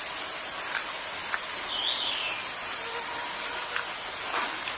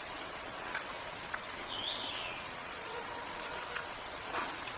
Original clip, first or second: first